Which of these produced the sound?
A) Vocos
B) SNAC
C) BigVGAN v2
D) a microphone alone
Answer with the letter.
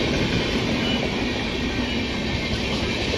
D